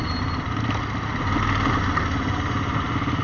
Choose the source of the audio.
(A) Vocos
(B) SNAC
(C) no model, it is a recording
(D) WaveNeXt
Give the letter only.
C